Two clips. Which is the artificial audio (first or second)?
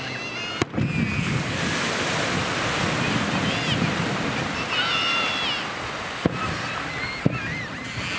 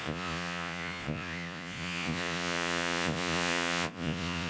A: second